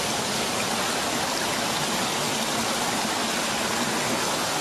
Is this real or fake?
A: real